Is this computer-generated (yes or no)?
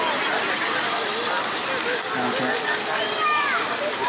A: no